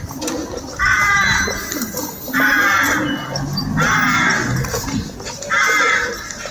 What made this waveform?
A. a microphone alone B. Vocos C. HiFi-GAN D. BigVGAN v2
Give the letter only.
A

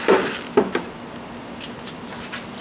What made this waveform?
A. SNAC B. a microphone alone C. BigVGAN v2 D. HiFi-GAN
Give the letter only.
B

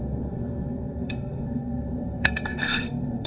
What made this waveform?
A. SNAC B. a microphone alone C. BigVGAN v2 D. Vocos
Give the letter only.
A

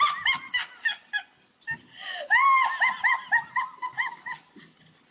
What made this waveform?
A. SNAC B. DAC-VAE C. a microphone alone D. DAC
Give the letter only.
C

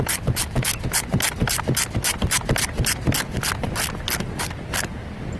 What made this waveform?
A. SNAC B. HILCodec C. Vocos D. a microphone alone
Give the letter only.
D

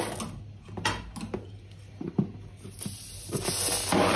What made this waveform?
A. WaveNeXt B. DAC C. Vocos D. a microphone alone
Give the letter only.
D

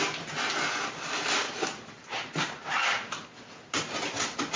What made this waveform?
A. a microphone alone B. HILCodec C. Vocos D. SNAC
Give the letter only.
A